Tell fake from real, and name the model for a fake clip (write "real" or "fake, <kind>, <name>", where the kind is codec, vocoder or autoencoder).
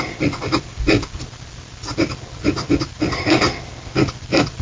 real